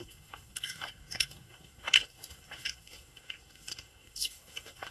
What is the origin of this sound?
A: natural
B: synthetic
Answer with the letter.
B